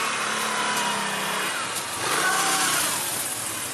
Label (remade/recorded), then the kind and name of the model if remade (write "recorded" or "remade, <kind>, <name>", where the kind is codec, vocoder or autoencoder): recorded